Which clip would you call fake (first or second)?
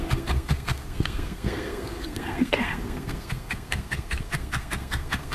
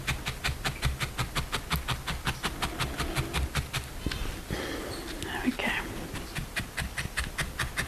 first